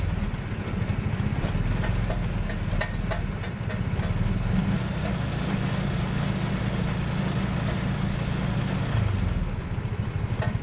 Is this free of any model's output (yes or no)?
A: yes